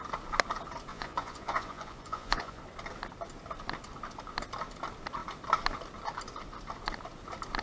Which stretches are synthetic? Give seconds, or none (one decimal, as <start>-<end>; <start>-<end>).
0.9-2.6